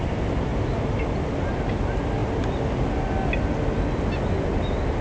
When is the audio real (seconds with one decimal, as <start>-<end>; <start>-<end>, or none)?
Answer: 0.0-5.0